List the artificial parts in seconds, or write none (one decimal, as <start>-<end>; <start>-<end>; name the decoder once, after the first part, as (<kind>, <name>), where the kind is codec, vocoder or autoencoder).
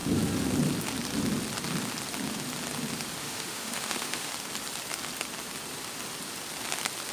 3.2-4.3 (autoencoder, DAC-VAE)